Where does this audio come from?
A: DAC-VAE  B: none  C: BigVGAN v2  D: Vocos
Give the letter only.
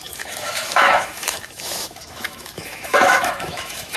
A